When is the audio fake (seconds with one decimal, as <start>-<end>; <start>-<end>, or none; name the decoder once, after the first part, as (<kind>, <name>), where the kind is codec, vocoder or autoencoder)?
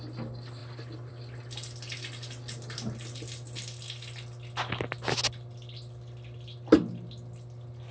none